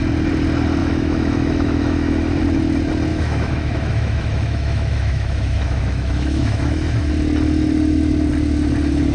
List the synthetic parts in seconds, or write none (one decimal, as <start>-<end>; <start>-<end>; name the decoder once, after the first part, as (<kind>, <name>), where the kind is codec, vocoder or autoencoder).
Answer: 0.8-2.4 (autoencoder, DAC-VAE); 3.1-7.1